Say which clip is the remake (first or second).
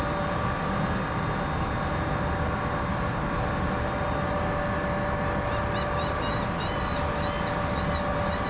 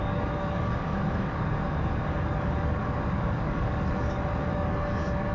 second